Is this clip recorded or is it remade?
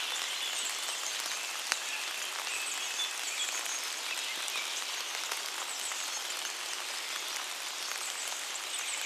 recorded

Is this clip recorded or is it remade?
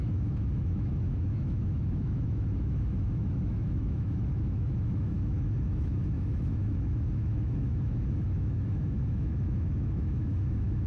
remade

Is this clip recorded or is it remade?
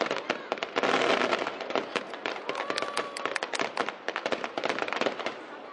recorded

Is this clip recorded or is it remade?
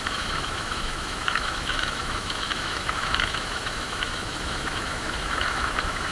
remade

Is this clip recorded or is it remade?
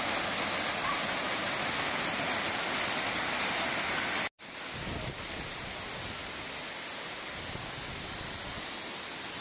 recorded